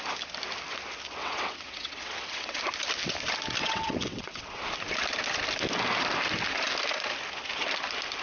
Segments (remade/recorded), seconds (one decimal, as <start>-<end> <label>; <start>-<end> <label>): 0.0-1.2 recorded; 1.2-2.6 remade; 2.6-3.6 recorded; 3.6-4.6 remade; 4.6-8.2 recorded

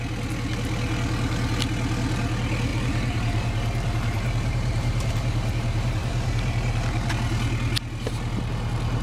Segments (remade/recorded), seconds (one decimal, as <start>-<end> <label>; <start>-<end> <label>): 0.0-2.7 recorded; 2.7-7.1 remade; 7.1-9.0 recorded

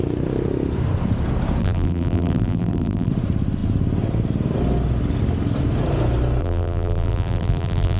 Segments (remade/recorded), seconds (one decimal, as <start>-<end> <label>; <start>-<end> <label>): 0.0-1.6 recorded; 1.6-3.1 remade; 3.1-6.4 recorded; 6.4-8.0 remade

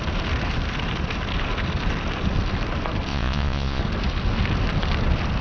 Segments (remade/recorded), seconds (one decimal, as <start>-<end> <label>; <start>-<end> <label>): 0.0-3.1 recorded; 3.1-3.8 remade; 3.8-5.4 recorded

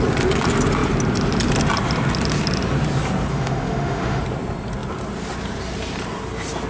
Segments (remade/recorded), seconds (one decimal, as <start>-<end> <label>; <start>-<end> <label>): 0.0-3.3 recorded; 3.3-4.2 remade; 4.2-6.7 recorded